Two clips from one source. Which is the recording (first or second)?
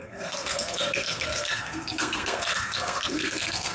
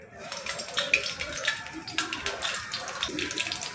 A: second